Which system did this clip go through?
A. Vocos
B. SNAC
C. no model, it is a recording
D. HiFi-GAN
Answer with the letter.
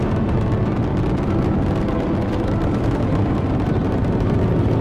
C